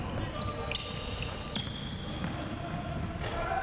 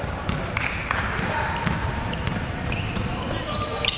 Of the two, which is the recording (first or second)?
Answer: first